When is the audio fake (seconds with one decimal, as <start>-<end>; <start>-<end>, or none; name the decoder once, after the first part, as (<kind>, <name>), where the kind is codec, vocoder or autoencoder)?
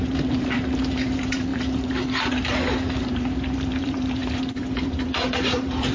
0.0-5.9 (vocoder, BigVGAN v2)